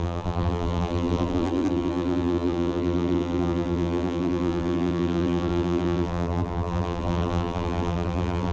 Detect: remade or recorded remade